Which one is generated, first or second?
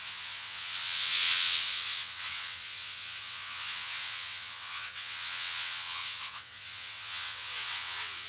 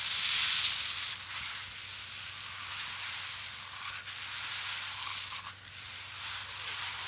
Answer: first